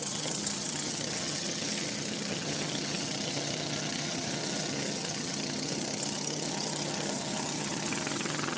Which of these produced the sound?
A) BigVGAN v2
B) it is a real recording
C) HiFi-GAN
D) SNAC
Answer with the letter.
C